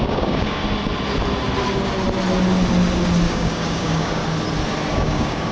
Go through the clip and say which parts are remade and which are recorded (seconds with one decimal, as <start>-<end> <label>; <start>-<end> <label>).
0.0-0.6 remade; 0.6-3.3 recorded; 3.3-4.2 remade; 4.2-4.9 recorded; 4.9-5.5 remade